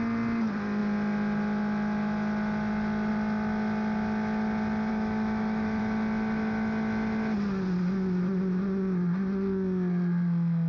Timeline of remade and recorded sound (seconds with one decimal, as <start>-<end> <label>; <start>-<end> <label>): 0.0-4.9 recorded; 4.9-5.8 remade; 5.8-10.7 recorded